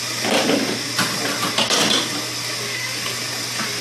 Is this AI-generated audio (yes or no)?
no